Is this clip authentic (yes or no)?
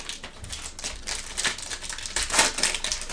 yes